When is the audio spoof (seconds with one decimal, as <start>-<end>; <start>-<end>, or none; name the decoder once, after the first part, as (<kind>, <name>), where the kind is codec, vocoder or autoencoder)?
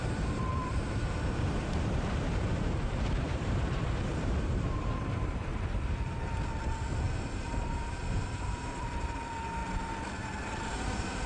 0.0-5.5 (vocoder, BigVGAN v2); 7.3-9.6; 10.4-11.3